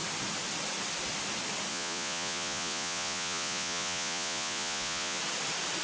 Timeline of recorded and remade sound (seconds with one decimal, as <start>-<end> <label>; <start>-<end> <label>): 0.0-1.7 recorded; 1.7-5.2 remade; 5.2-5.8 recorded